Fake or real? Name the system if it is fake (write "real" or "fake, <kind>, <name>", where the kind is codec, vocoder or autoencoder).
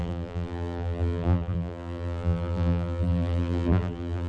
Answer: fake, vocoder, BigVGAN v2